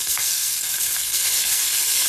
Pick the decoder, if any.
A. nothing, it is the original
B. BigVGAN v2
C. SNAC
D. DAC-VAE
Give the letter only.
C